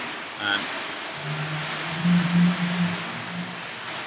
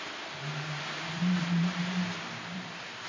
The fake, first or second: second